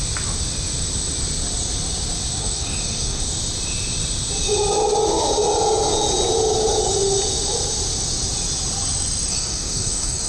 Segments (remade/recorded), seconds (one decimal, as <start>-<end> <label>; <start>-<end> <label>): 0.0-2.4 recorded; 2.4-3.2 remade; 3.2-9.3 recorded; 9.3-10.3 remade